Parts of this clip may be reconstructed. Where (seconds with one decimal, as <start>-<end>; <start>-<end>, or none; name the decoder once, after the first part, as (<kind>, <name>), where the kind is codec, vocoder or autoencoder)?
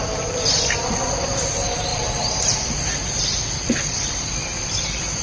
1.9-3.1 (vocoder, BigVGAN v2)